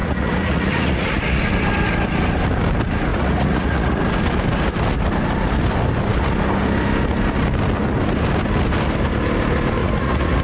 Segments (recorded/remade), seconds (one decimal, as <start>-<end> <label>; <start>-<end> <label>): 0.0-1.4 remade; 1.4-3.1 recorded; 3.1-4.0 remade; 4.0-9.8 recorded; 9.8-10.4 remade